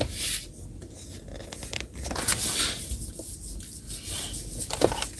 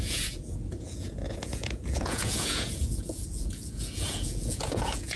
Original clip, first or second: first